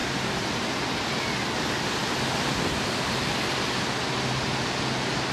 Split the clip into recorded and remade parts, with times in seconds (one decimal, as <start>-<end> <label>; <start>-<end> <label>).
0.0-5.3 recorded